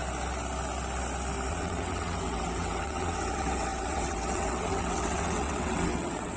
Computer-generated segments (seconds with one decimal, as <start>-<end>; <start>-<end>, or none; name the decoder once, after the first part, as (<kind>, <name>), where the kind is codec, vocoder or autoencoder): 1.5-6.4 (vocoder, WaveNeXt)